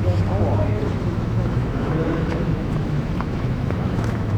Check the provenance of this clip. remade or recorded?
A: remade